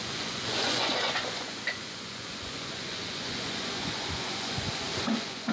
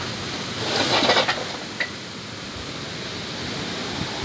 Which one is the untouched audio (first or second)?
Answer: second